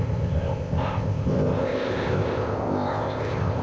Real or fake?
fake